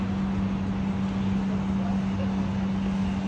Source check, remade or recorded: recorded